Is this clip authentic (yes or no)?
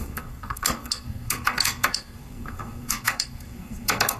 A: no